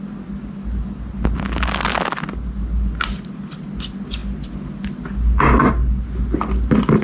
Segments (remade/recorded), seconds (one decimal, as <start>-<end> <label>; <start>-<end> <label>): 0.0-7.0 recorded